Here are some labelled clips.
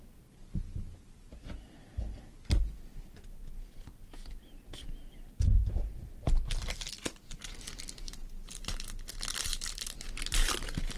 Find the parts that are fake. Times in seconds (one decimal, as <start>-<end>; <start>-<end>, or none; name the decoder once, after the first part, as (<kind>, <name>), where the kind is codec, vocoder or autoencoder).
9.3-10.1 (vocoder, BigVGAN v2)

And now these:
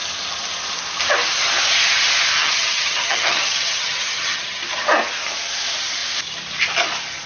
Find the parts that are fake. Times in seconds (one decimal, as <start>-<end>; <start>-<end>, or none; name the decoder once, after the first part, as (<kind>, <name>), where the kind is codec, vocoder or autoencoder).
2.3-4.6 (vocoder, HiFi-GAN)

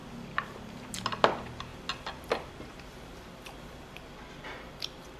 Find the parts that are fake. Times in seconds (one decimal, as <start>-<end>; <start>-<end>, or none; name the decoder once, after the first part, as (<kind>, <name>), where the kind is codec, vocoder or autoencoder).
none